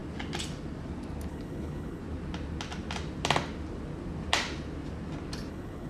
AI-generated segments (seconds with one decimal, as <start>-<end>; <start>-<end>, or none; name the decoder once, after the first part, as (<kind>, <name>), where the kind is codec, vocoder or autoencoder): 1.3-2.0 (codec, HILCodec); 5.5-5.9